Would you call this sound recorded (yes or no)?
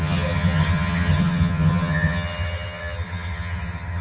no